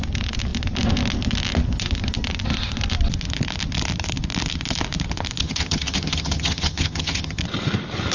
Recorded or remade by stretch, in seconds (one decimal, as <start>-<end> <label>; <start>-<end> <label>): 0.0-5.4 recorded; 5.4-7.4 remade; 7.4-8.1 recorded